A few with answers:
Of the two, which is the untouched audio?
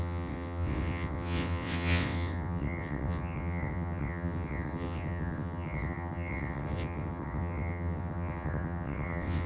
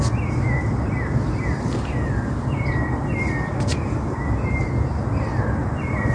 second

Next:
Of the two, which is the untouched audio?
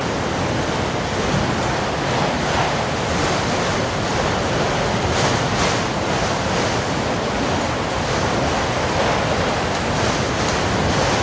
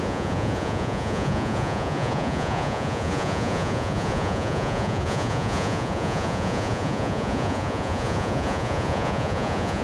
first